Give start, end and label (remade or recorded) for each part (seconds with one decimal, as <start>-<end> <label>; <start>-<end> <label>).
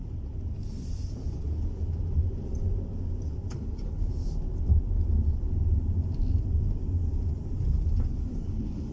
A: 0.0-3.5 recorded; 3.5-4.1 remade; 4.1-8.1 recorded; 8.1-8.9 remade